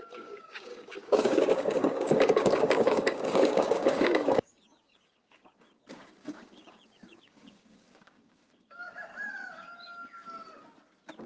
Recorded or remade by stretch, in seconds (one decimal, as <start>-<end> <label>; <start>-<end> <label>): 0.0-9.1 remade; 9.1-11.3 recorded